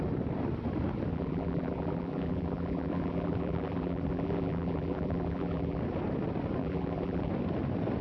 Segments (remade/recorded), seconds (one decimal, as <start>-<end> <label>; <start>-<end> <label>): 0.0-1.1 recorded; 1.1-5.8 remade; 5.8-6.6 recorded; 6.6-7.3 remade; 7.3-8.0 recorded